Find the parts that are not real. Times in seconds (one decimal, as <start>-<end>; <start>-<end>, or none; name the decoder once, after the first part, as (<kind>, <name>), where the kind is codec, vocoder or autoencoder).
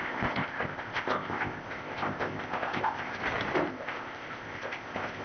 0.0-3.2 (codec, ZipCodec); 3.7-5.2